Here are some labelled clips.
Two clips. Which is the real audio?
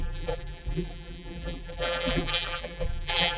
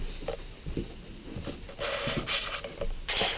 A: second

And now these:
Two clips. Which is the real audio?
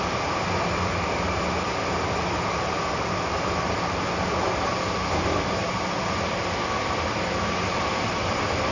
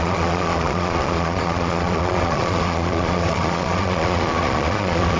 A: first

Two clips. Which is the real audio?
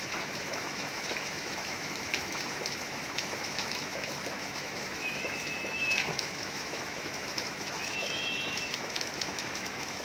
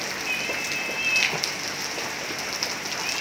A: second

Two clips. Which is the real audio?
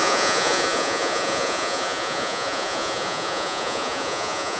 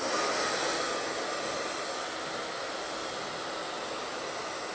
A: second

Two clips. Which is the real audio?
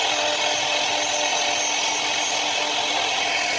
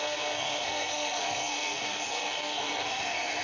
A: first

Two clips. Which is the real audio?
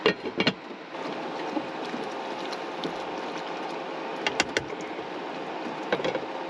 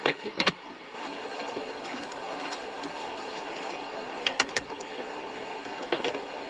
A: first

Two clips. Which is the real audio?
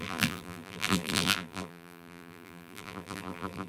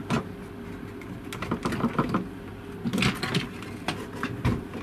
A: second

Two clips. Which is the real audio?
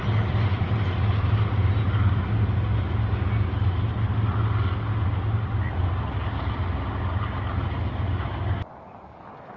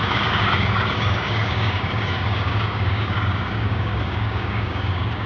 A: first